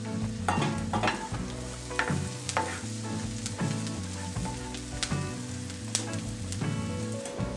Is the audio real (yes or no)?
yes